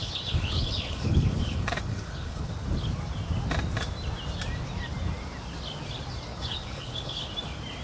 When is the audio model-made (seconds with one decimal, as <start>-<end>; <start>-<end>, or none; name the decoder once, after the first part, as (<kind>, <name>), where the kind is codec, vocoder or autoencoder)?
0.0-2.5 (codec, HILCodec); 6.3-7.3